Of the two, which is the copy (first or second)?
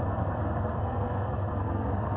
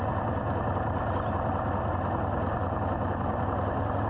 first